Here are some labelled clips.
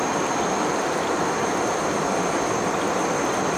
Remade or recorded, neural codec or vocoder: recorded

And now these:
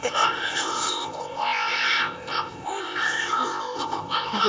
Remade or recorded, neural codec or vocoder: remade, codec, ZipCodec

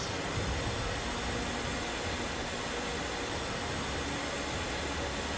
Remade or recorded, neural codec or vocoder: recorded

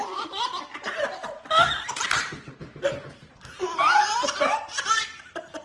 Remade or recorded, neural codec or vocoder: remade, vocoder, BigVGAN v2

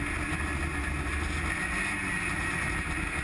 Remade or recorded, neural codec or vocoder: recorded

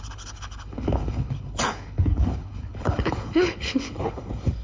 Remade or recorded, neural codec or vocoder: remade, codec, HILCodec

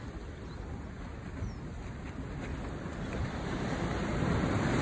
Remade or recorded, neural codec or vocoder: recorded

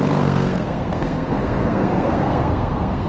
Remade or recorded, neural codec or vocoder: remade, codec, SNAC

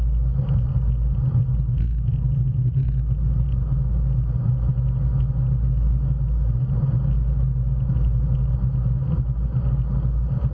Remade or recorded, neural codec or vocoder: recorded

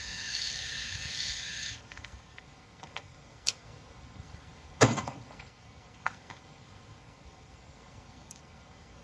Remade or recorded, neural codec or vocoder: remade, codec, SNAC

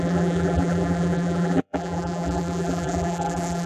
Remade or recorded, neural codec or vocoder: remade, vocoder, BigVGAN v2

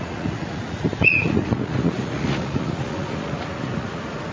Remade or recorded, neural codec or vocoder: remade, vocoder, Vocos